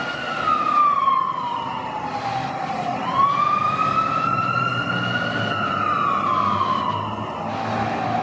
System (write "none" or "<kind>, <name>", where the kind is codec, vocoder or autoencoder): none